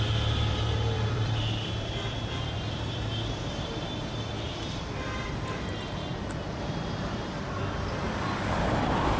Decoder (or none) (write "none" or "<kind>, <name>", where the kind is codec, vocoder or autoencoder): vocoder, BigVGAN v2